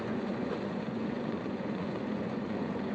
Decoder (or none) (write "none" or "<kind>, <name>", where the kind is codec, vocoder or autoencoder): vocoder, Vocos